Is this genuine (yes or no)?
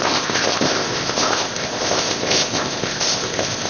no